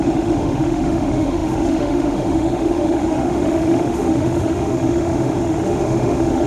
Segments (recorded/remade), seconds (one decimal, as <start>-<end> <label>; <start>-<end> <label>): 0.0-6.5 remade